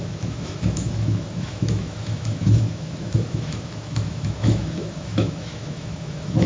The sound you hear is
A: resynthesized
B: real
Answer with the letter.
A